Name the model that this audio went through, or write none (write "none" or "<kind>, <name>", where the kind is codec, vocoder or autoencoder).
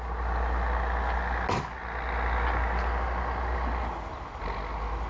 none